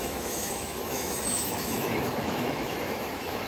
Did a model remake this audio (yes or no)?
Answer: yes